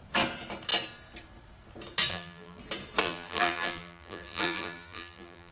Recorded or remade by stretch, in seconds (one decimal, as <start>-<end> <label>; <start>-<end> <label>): 0.0-2.1 recorded; 2.1-2.6 remade; 2.6-3.0 recorded; 3.0-5.5 remade